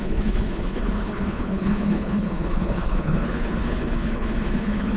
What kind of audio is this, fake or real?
fake